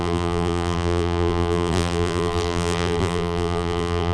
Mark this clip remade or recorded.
remade